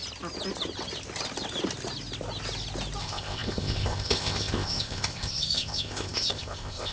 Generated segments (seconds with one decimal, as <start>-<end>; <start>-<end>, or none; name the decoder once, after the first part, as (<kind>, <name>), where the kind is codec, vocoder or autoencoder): 3.0-6.9 (codec, ZipCodec)